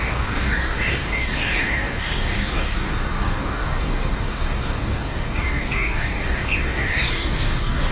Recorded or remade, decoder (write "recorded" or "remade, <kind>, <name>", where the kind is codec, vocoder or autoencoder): remade, codec, DAC